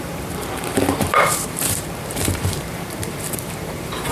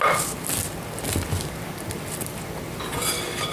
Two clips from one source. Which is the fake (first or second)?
first